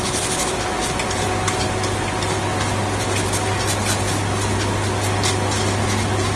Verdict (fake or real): real